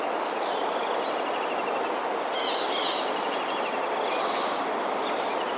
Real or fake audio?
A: real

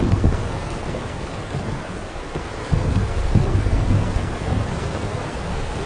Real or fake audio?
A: fake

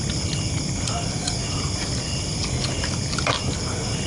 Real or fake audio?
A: real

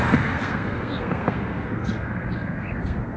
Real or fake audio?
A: fake